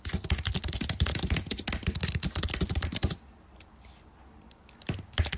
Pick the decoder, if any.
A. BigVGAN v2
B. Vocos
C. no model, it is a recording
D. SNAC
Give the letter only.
C